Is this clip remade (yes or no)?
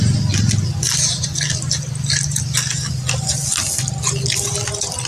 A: no